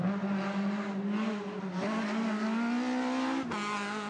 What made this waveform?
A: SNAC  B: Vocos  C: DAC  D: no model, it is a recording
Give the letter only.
D